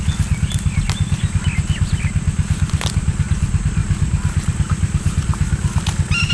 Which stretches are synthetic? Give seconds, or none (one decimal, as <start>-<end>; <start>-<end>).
none